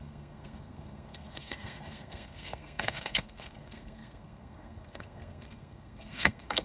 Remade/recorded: remade